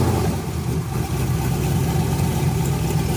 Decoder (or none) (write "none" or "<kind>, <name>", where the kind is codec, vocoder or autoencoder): vocoder, BigVGAN v2